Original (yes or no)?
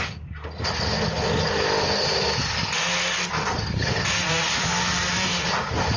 yes